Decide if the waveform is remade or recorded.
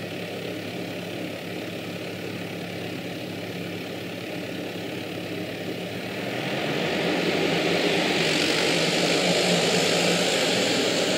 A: recorded